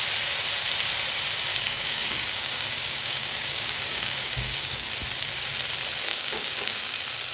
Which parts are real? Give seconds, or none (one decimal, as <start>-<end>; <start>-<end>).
0.0-1.5; 4.9-6.1; 6.8-7.3